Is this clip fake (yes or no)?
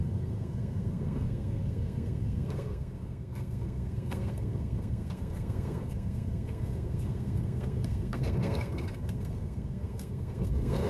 yes